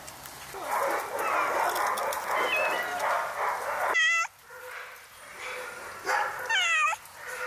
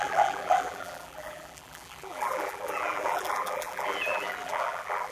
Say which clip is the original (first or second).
first